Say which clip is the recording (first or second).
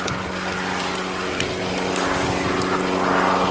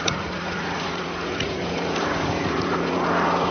first